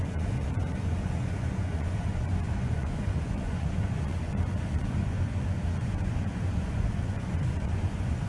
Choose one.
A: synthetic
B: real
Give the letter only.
A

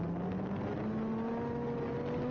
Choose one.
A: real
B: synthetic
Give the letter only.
A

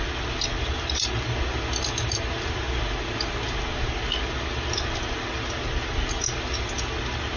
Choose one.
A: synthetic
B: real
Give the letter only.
B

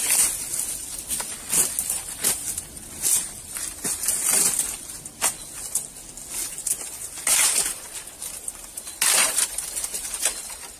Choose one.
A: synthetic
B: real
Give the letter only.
B